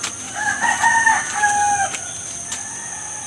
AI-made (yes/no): no